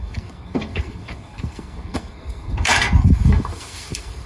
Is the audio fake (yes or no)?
yes